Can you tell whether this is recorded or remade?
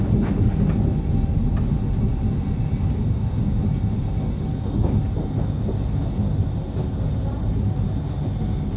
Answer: recorded